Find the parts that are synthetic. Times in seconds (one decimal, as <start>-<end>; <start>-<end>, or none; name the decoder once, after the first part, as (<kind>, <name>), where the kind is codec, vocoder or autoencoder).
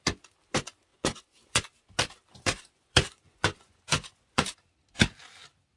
0.9-1.6 (vocoder, Vocos); 2.3-4.4